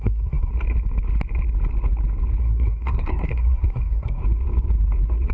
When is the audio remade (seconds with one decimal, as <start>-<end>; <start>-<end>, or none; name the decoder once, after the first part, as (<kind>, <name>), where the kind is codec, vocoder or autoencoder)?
0.0-0.5 (codec, SNAC); 2.4-4.2